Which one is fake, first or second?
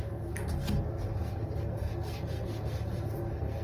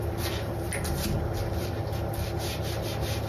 first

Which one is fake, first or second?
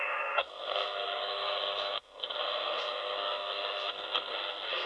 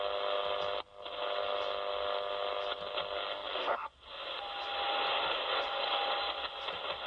first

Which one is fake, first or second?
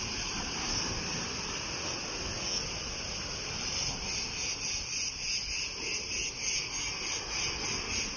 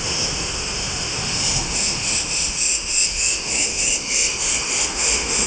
second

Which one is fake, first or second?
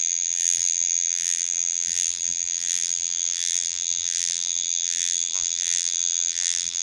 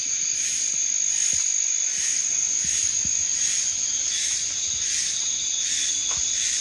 first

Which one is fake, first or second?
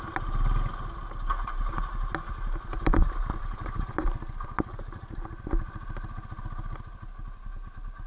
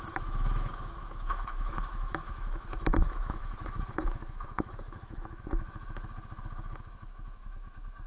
second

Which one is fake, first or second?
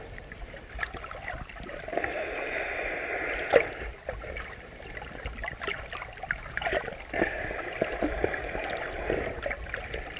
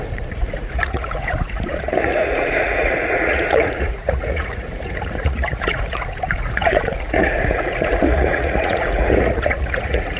second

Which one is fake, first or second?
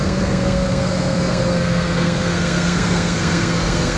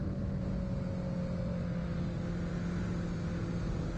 first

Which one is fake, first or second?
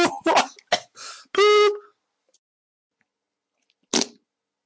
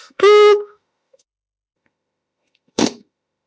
second